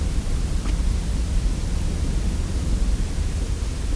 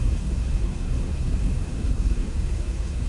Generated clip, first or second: second